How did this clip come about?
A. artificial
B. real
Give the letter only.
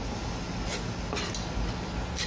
B